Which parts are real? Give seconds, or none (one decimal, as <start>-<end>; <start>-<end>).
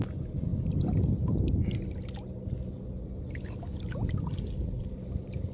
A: 0.0-5.5